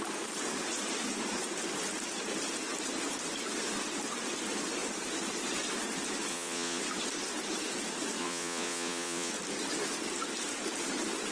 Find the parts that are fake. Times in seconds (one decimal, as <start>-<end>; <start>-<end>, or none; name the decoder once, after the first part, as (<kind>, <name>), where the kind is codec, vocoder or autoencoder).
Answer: 6.3-6.8 (vocoder, Vocos); 8.2-9.3